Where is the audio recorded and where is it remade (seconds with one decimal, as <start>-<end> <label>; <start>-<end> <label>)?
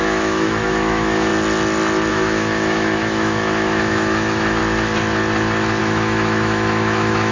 0.0-1.3 remade; 1.3-2.1 recorded; 2.1-4.6 remade; 4.6-5.8 recorded; 5.8-7.3 remade